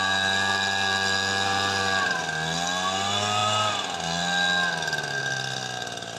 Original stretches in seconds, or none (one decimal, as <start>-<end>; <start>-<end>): 0.0-6.2